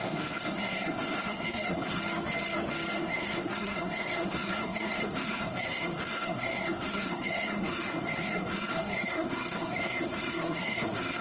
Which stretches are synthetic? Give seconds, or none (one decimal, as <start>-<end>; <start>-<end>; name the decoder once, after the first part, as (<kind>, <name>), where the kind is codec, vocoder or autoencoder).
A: 0.0-2.0 (codec, SNAC); 2.9-11.2